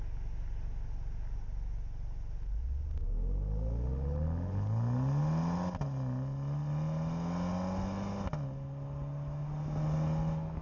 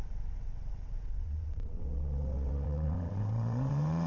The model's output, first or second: second